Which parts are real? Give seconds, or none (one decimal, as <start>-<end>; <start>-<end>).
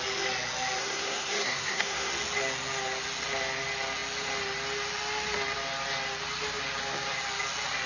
0.0-0.8; 2.1-7.9